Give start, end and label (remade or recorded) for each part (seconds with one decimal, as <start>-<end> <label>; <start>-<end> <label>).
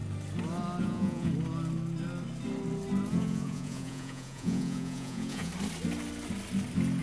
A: 0.0-0.8 recorded; 0.8-1.3 remade; 1.3-3.1 recorded; 3.1-5.5 remade; 5.5-7.0 recorded